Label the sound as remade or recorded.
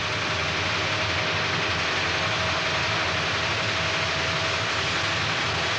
recorded